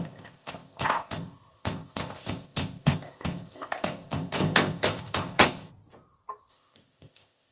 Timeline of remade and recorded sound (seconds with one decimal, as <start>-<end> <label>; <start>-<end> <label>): 0.0-5.7 remade; 5.7-6.5 recorded; 6.5-7.5 remade